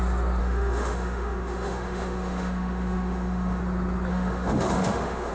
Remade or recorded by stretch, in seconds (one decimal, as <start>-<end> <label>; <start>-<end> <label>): 0.0-0.4 recorded; 0.4-3.6 remade; 3.6-4.1 recorded; 4.1-5.3 remade